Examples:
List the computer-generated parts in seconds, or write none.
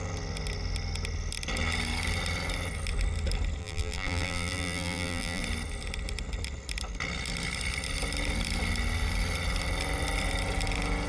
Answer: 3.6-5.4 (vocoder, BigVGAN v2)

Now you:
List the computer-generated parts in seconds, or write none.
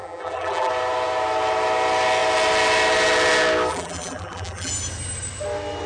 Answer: 0.0-0.7 (vocoder, BigVGAN v2); 3.7-4.7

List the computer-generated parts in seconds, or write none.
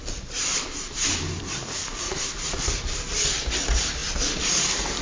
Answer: 0.0-5.0 (vocoder, BigVGAN v2)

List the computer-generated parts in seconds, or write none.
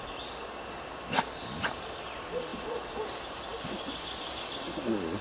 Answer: none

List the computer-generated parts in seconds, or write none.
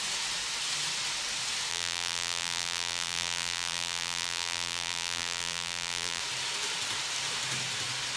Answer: 1.7-6.2 (vocoder, BigVGAN v2)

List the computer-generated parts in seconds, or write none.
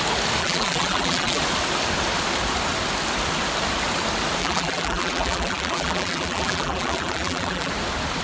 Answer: 0.4-1.4 (vocoder, BigVGAN v2); 4.4-7.7